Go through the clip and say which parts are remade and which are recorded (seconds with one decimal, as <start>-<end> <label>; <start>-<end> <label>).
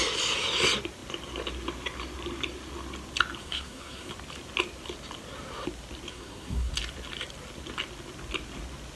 0.0-3.4 recorded; 3.4-4.1 remade; 4.1-6.1 recorded; 6.1-6.7 remade; 6.7-9.0 recorded